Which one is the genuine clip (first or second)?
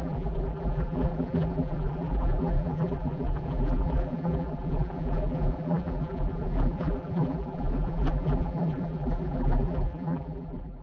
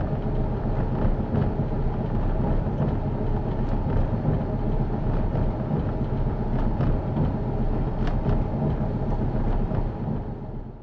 second